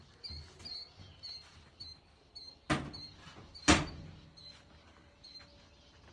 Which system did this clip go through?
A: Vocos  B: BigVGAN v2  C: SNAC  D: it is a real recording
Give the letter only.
D